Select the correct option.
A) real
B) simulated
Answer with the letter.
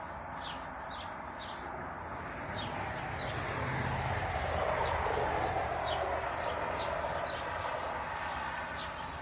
A